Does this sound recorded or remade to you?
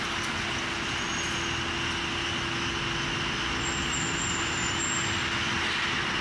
recorded